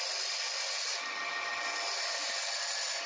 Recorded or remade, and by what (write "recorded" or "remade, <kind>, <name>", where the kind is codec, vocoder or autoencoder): recorded